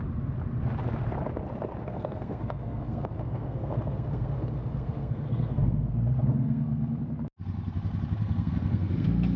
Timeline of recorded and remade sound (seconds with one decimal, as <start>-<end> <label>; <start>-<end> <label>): 0.0-1.8 recorded; 1.8-7.0 remade; 7.0-8.2 recorded; 8.2-9.4 remade